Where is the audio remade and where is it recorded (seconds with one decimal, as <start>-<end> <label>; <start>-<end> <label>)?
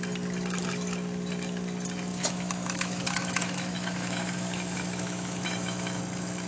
0.0-2.1 recorded; 2.1-6.0 remade; 6.0-6.5 recorded